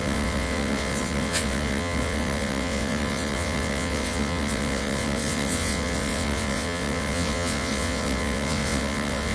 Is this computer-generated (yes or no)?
yes